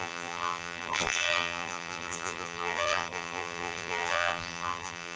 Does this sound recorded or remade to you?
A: remade